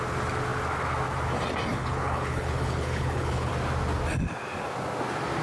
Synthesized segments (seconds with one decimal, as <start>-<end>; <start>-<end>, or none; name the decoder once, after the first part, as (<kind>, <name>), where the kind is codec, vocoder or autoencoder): 1.7-3.5 (codec, HILCodec)